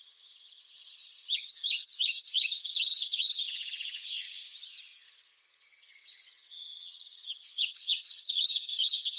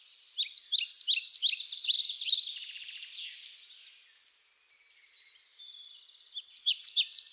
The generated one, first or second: first